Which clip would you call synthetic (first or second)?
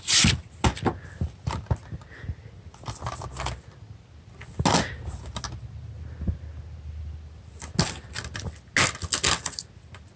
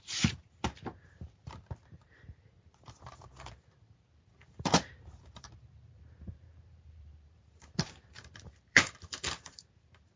second